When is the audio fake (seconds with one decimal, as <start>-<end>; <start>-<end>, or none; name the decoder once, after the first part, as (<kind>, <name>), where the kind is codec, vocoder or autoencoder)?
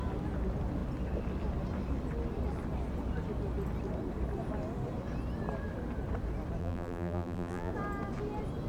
6.6-7.7 (vocoder, BigVGAN v2)